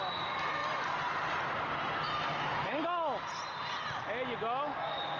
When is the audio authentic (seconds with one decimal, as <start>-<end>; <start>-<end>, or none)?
0.0-5.2